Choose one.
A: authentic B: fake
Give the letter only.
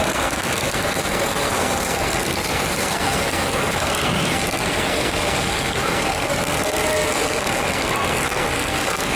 B